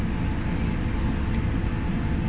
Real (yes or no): yes